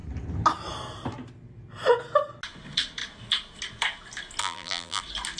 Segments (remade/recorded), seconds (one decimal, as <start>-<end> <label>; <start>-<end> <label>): 0.0-4.4 recorded; 4.4-5.0 remade; 5.0-5.4 recorded